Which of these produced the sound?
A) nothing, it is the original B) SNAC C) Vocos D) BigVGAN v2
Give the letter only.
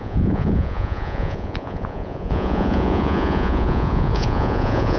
C